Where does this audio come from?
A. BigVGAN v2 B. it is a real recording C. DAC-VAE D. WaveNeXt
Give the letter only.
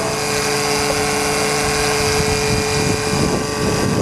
B